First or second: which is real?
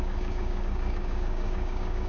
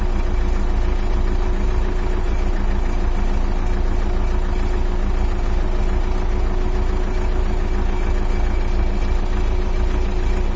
second